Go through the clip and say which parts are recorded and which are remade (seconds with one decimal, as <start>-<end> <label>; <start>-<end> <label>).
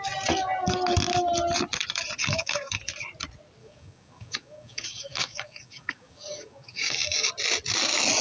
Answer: 0.0-2.2 recorded; 2.2-2.8 remade; 2.8-3.6 recorded; 3.6-7.3 remade; 7.3-8.2 recorded